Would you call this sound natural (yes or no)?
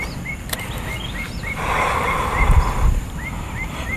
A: no